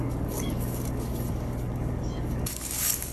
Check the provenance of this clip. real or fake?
fake